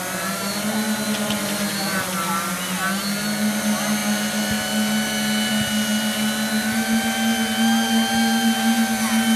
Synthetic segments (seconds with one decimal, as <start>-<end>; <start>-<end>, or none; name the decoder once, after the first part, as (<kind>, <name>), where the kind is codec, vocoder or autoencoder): none